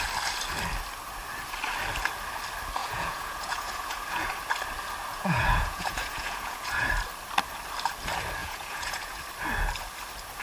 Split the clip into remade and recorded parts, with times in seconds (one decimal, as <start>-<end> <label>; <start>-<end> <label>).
0.0-2.8 recorded; 2.8-4.3 remade; 4.3-5.1 recorded; 5.1-6.9 remade; 6.9-8.4 recorded; 8.4-9.2 remade; 9.2-10.4 recorded